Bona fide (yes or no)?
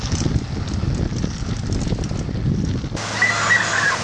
yes